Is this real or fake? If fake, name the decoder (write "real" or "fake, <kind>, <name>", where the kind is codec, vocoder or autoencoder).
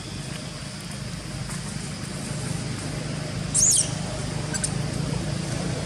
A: real